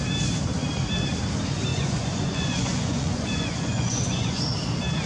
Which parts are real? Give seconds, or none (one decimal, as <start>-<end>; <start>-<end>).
0.0-1.7; 4.4-5.1